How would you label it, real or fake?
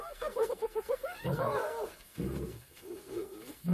fake